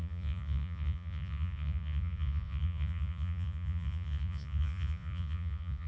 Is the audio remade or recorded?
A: remade